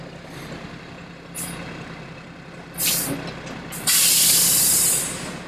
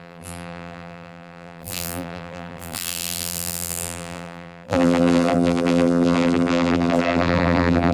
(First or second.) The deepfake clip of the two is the second